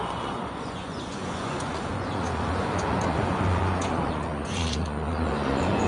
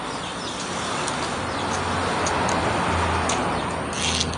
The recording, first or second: second